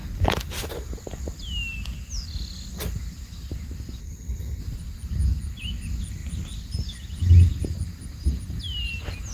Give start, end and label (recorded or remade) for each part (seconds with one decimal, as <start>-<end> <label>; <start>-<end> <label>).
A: 0.0-4.0 recorded; 4.0-4.6 remade; 4.6-9.3 recorded